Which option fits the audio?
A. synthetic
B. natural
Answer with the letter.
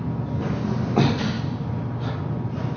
B